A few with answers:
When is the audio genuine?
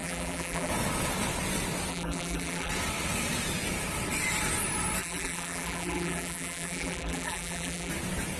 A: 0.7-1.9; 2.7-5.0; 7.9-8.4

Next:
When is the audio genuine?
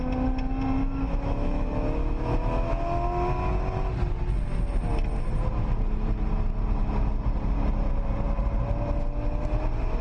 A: 0.0-0.8; 2.7-10.0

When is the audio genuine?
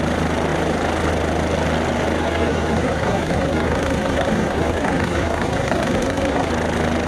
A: 0.0-2.2; 6.5-7.1